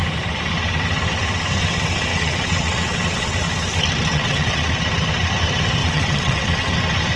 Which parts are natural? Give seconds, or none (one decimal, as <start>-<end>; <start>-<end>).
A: 0.0-2.1; 3.5-4.1; 4.7-5.8; 6.7-7.2